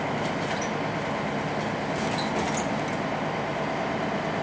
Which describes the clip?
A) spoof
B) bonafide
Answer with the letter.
B